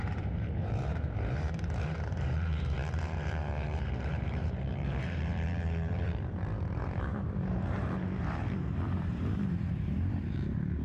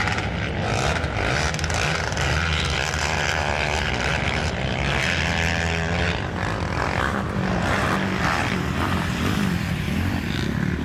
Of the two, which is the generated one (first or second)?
first